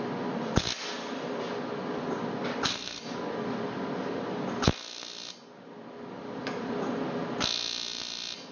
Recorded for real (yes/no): yes